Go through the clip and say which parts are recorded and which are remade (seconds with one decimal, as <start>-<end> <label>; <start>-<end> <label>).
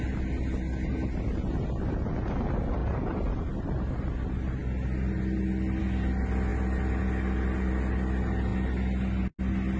0.0-2.8 recorded; 2.8-3.5 remade; 3.5-9.8 recorded